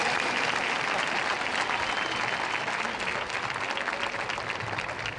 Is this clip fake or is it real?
real